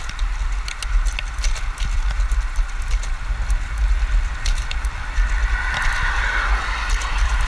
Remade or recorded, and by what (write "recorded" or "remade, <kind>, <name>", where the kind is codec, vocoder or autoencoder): recorded